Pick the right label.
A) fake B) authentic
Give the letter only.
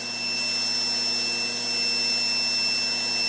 B